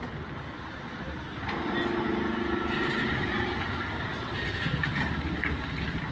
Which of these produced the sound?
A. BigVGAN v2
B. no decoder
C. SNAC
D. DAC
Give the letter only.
B